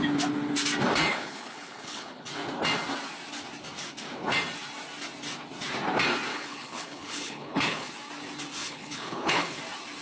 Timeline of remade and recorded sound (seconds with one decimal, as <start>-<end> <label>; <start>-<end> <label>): 0.0-1.1 recorded; 1.1-2.3 remade; 2.3-6.3 recorded; 6.3-7.9 remade; 7.9-8.6 recorded; 8.6-9.6 remade; 9.6-10.0 recorded